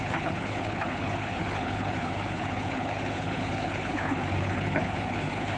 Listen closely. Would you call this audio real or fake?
fake